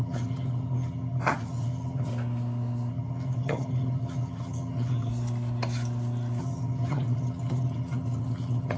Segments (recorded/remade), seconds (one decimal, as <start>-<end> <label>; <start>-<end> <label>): 0.0-2.1 remade; 2.1-2.9 recorded; 2.9-5.1 remade; 5.1-6.4 recorded; 6.4-8.8 remade